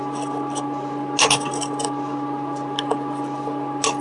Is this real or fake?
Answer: real